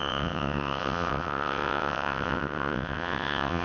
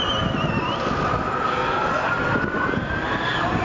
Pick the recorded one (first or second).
second